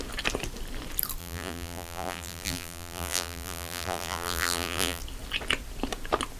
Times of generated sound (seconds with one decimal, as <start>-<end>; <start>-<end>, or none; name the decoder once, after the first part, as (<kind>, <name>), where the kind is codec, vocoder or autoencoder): 1.2-5.0 (vocoder, BigVGAN v2)